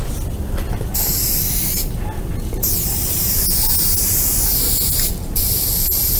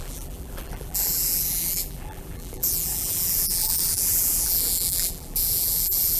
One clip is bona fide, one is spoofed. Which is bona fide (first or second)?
first